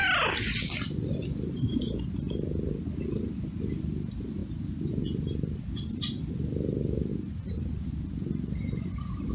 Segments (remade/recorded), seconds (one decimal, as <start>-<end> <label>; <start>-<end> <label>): 0.0-3.4 recorded; 3.4-4.4 remade; 4.4-5.6 recorded; 5.6-7.1 remade; 7.1-9.3 recorded